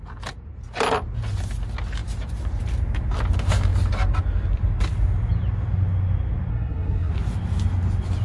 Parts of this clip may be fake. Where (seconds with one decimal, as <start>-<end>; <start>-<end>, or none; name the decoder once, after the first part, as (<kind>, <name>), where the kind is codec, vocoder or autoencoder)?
6.5-7.1 (codec, SNAC)